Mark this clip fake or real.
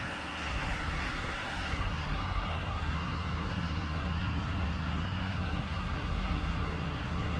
fake